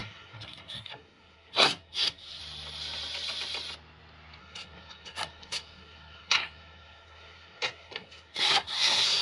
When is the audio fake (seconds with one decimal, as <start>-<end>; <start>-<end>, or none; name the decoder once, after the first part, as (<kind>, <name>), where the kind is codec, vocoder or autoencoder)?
0.0-2.4 (codec, SNAC); 4.4-9.2